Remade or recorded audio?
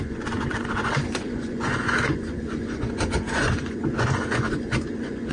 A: remade